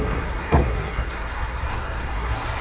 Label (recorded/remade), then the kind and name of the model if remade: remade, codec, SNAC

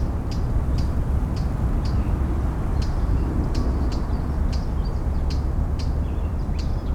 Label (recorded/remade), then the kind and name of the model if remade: recorded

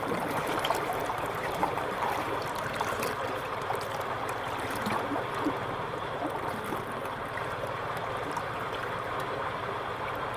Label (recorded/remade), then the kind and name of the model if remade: remade, vocoder, BigVGAN v2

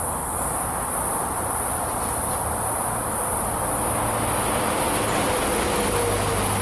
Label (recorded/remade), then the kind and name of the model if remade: recorded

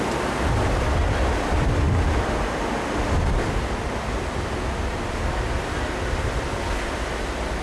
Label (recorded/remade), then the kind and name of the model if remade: recorded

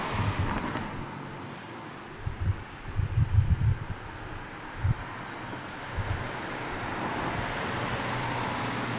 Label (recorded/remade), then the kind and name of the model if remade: recorded